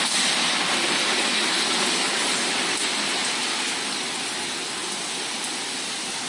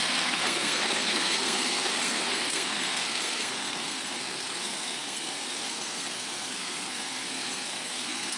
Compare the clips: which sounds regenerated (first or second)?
second